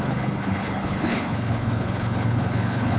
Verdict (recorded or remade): remade